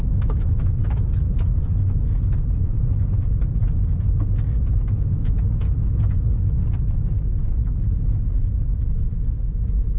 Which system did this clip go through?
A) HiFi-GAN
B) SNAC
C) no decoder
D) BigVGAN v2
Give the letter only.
C